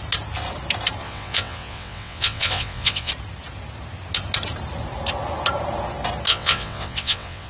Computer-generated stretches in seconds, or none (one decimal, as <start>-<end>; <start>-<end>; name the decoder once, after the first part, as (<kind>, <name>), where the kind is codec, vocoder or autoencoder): 1.0-3.1 (vocoder, WaveNeXt); 6.3-7.5